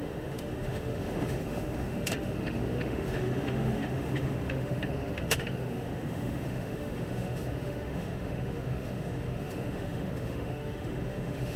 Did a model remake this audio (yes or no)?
yes